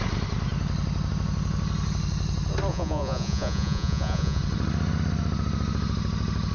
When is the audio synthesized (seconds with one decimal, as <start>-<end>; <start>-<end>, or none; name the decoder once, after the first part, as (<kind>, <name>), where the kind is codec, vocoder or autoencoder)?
2.7-4.4 (vocoder, Vocos)